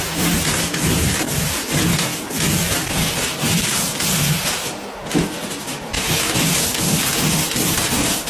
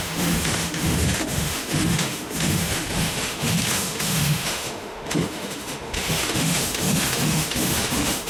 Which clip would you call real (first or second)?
first